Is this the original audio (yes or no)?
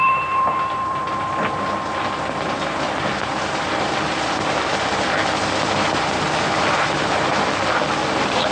yes